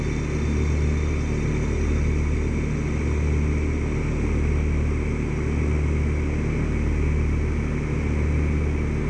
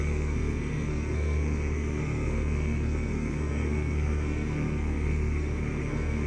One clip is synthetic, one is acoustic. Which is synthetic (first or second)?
second